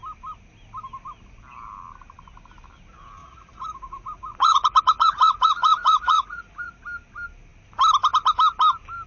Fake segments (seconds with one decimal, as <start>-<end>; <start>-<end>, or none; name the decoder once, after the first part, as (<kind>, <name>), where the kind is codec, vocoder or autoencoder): 3.2-6.8 (vocoder, Vocos)